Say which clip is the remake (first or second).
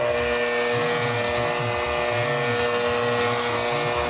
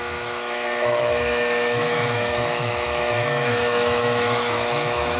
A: second